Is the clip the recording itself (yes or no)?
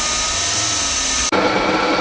yes